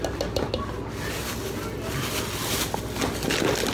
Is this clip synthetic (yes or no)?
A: no